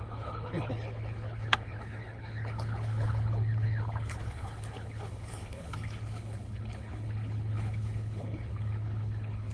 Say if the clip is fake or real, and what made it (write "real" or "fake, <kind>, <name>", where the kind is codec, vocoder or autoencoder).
fake, codec, HILCodec